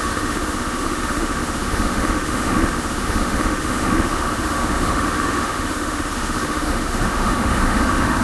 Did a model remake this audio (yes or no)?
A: yes